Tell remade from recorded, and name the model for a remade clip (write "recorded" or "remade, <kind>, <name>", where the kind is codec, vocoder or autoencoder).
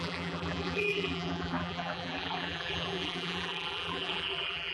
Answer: remade, vocoder, BigVGAN v2